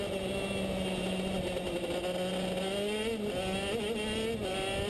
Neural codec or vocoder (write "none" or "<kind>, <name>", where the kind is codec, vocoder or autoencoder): none